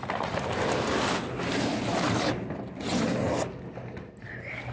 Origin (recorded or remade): recorded